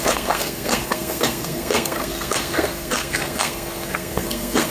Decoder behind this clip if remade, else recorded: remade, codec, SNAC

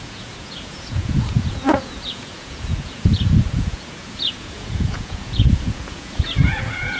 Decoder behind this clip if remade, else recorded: remade, vocoder, Vocos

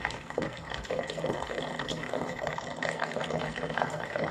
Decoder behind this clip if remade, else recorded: remade, codec, SNAC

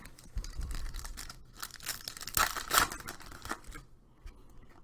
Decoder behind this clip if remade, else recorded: recorded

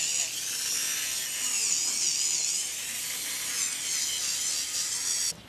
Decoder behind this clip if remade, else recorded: recorded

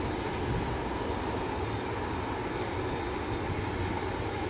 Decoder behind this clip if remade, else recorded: recorded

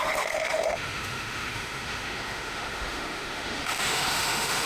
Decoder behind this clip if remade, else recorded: remade, autoencoder, DAC-VAE